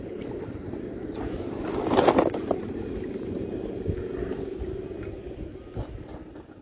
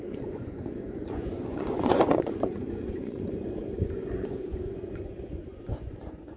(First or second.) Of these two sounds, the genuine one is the first